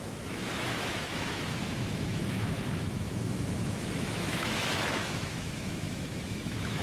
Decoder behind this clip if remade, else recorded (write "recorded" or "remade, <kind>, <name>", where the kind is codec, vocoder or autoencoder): remade, autoencoder, DAC-VAE